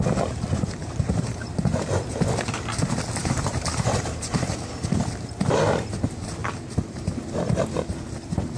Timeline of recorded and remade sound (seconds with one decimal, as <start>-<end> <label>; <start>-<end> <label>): 0.0-0.8 recorded; 0.8-1.8 remade; 1.8-3.2 recorded; 3.2-4.5 remade; 4.5-8.6 recorded